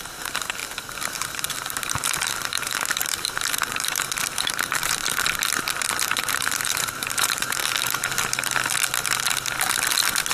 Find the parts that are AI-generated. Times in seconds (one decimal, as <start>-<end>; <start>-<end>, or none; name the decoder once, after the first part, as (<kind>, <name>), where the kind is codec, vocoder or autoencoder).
0.0-0.6 (vocoder, BigVGAN v2); 1.1-5.0; 6.1-7.6